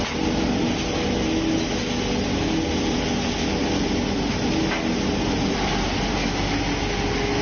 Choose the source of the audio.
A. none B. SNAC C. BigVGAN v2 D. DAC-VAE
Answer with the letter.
A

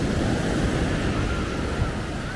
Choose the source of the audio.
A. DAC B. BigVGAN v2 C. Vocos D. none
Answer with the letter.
D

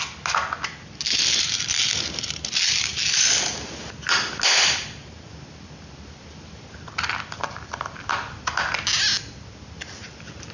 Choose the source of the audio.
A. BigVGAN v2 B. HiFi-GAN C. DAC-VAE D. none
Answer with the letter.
D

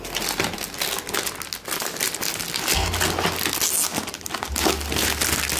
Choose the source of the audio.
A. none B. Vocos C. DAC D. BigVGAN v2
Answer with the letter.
A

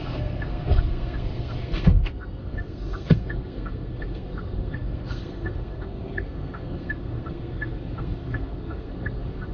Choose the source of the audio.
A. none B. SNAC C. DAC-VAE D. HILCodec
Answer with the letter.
B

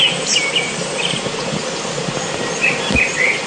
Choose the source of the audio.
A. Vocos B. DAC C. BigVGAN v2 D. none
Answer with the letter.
D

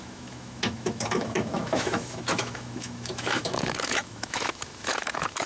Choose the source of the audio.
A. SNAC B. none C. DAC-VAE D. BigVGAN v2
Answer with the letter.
C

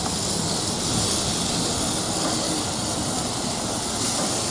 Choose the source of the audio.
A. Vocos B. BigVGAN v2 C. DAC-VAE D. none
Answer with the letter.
D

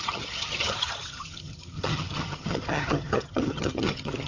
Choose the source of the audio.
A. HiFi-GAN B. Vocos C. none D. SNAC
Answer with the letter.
A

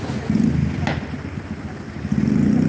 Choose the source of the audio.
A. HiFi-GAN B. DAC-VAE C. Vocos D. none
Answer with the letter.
D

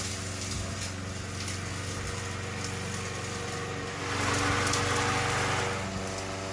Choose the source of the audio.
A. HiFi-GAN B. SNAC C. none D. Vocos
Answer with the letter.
C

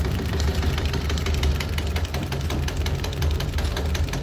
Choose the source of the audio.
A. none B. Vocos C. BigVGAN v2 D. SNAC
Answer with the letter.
C